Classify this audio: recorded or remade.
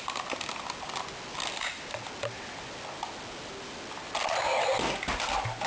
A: recorded